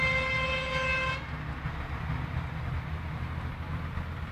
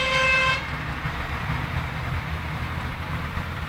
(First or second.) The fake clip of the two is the second